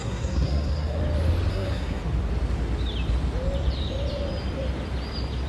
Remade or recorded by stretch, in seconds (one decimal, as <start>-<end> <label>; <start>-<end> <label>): 0.0-1.0 remade; 1.0-1.5 recorded; 1.5-2.0 remade; 2.0-5.5 recorded